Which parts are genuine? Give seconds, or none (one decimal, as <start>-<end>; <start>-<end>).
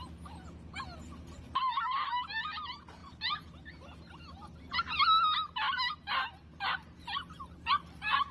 0.0-8.3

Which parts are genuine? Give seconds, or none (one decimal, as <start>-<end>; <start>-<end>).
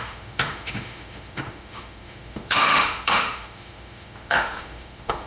none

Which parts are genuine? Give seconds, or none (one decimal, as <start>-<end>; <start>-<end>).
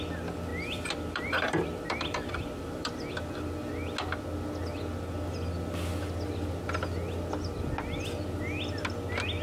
0.0-0.5; 3.1-9.4